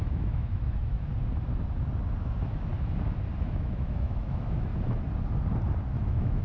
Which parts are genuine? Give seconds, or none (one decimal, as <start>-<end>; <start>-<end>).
1.1-2.2; 2.7-3.4; 4.7-5.9